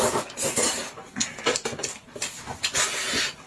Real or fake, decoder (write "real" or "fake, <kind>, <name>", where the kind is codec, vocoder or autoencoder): real